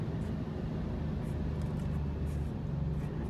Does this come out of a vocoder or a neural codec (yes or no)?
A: no